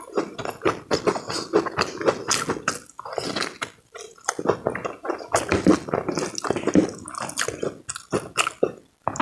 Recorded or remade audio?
recorded